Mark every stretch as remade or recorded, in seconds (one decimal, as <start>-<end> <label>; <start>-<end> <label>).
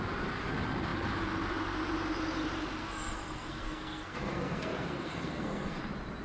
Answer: 0.0-2.8 recorded; 2.8-5.8 remade; 5.8-6.2 recorded